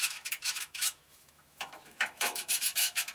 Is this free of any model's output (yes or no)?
no